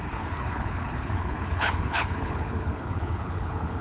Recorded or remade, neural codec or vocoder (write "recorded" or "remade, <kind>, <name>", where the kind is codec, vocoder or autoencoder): remade, codec, HILCodec